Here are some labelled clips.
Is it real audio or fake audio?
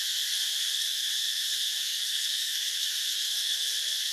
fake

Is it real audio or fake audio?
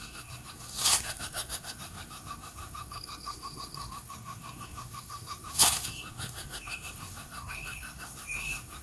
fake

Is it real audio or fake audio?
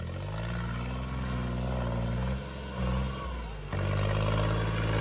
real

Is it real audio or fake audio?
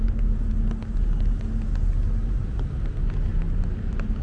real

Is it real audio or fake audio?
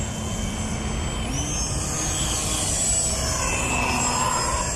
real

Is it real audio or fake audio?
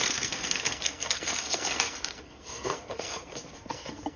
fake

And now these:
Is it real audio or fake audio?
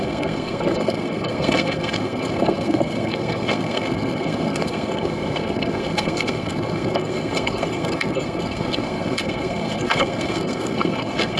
fake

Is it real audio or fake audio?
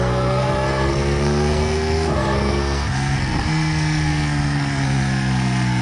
fake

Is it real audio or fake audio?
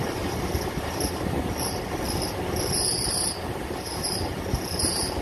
real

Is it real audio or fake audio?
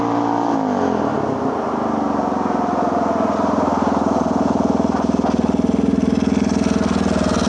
real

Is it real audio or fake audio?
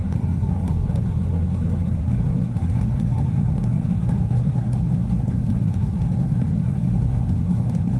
fake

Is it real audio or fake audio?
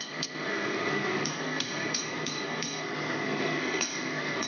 fake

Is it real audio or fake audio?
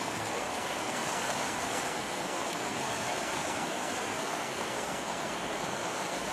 fake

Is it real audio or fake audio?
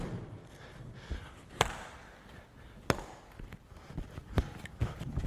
real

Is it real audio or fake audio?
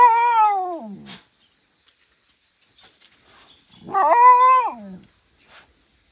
real